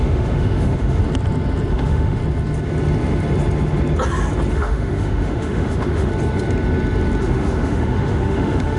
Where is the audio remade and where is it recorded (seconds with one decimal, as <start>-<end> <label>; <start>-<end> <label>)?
0.0-1.0 remade; 1.0-1.7 recorded; 1.7-2.2 remade; 2.2-4.5 recorded; 4.5-6.1 remade; 6.1-7.2 recorded; 7.2-8.8 remade